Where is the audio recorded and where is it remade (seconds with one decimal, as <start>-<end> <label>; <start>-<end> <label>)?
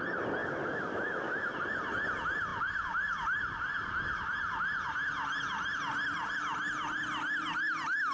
0.0-0.4 recorded; 0.4-1.5 remade; 1.5-8.1 recorded